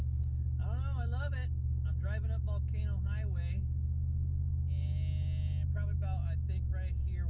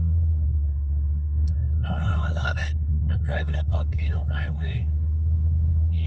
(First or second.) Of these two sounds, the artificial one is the second